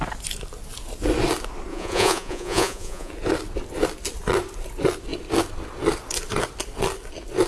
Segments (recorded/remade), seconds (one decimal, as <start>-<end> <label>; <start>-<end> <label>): 0.0-1.7 recorded; 1.7-3.1 remade; 3.1-7.5 recorded